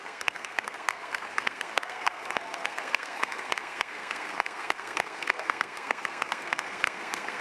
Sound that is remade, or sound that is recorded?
remade